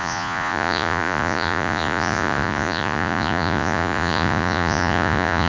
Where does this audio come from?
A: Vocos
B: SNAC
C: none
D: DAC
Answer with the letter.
A